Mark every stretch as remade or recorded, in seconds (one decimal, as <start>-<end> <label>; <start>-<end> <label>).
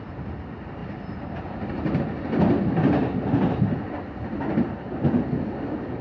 0.0-6.0 recorded